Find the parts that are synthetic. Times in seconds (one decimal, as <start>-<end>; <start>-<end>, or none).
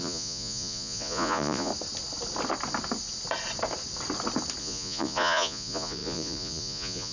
0.0-1.7; 4.6-7.1